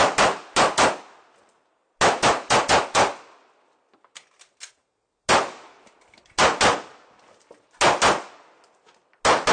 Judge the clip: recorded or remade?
recorded